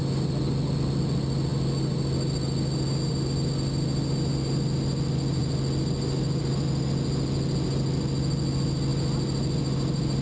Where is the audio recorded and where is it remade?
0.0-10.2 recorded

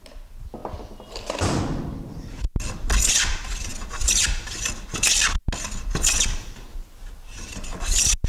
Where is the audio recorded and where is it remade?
0.0-8.3 recorded

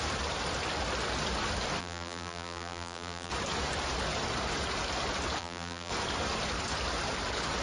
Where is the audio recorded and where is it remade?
0.0-1.8 recorded; 1.8-3.3 remade; 3.3-5.4 recorded; 5.4-5.9 remade; 5.9-7.6 recorded